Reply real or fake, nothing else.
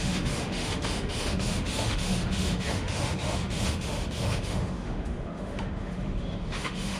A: fake